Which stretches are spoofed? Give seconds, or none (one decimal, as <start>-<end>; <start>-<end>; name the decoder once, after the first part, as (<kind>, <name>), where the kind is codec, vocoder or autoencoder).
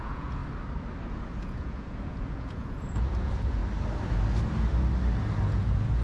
0.0-0.4 (vocoder, Vocos); 1.1-3.6; 5.4-6.0